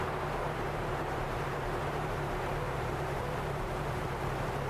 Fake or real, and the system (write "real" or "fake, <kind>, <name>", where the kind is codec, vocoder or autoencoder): fake, vocoder, BigVGAN v2